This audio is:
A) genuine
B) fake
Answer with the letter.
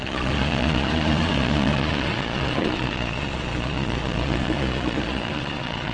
B